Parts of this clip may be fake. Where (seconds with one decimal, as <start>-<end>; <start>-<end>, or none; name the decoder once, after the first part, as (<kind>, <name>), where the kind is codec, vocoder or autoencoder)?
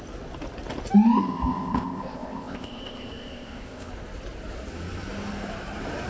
1.2-3.9 (codec, ZipCodec)